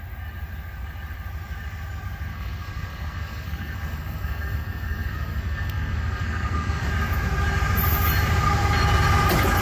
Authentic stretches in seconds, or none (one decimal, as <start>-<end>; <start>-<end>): 0.0-2.3; 6.9-9.6